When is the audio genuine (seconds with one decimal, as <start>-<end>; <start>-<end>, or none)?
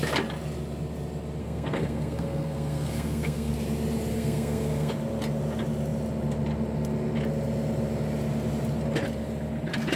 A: 0.0-1.4; 3.5-4.1; 4.9-10.0